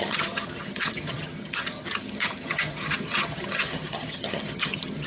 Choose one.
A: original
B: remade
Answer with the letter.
B